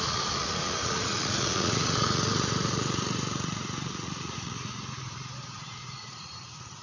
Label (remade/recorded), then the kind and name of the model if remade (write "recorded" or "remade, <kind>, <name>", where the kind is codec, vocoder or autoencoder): remade, vocoder, Vocos